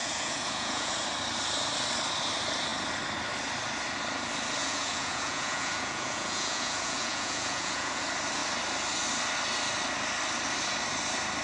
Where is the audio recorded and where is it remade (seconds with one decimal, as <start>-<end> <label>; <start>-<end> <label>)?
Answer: 0.0-0.9 remade; 0.9-4.6 recorded; 4.6-8.0 remade; 8.0-11.4 recorded